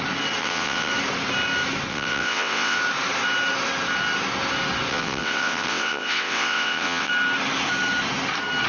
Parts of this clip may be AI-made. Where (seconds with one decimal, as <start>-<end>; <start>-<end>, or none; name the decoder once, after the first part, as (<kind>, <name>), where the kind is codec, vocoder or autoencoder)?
0.4-0.9 (vocoder, WaveNeXt); 1.9-2.8; 4.9-7.1